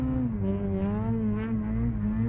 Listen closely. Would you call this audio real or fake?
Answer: real